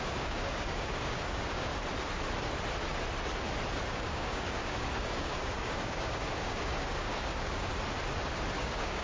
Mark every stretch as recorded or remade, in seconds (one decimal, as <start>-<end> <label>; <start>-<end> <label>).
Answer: 0.0-1.7 remade; 1.7-3.9 recorded; 3.9-7.7 remade; 7.7-8.6 recorded; 8.6-9.0 remade